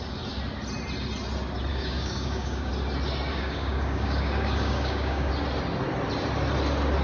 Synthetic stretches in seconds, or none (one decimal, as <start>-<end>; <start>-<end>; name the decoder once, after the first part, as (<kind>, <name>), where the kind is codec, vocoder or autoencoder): 1.7-2.7 (codec, DAC); 3.3-5.3